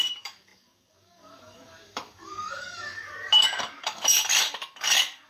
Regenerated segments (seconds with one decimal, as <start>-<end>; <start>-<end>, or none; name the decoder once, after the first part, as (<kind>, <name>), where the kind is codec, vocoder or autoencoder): 0.0-5.3 (codec, DAC)